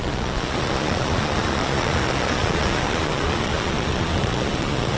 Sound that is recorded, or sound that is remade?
remade